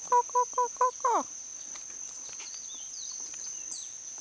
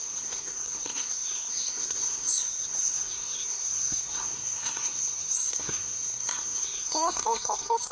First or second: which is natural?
first